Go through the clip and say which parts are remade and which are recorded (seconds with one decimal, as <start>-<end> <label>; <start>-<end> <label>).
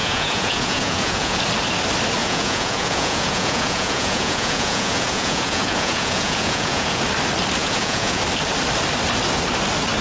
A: 0.0-1.4 remade; 1.4-2.2 recorded; 2.2-7.0 remade; 7.0-7.6 recorded; 7.6-8.2 remade; 8.2-10.0 recorded